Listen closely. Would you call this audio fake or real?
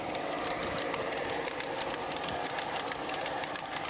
fake